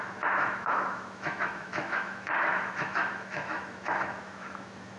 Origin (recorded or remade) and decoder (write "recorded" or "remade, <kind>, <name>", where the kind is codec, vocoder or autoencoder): remade, autoencoder, DAC-VAE